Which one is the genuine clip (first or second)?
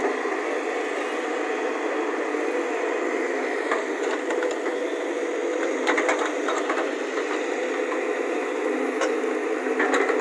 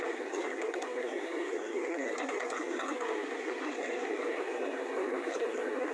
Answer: first